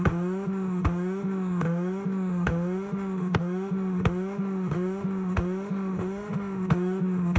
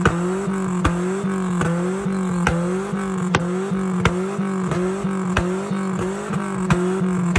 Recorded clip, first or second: second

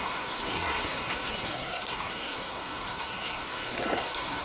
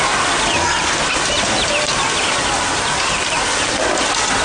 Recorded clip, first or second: second